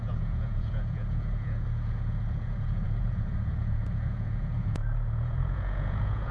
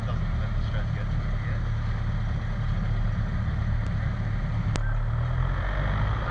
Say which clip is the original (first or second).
second